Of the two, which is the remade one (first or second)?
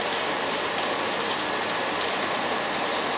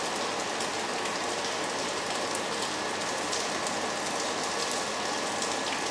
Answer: first